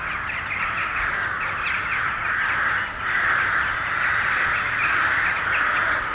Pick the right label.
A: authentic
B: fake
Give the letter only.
A